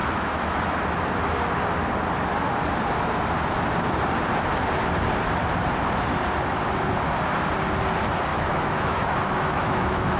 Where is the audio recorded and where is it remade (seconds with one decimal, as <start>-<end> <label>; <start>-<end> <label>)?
0.0-0.6 remade; 0.6-8.3 recorded; 8.3-10.2 remade